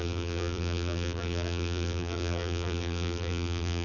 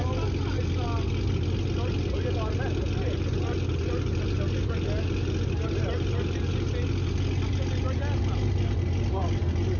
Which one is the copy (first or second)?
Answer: first